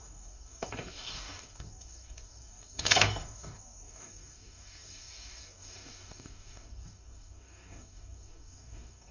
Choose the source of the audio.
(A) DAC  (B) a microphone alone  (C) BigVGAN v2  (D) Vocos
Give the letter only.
A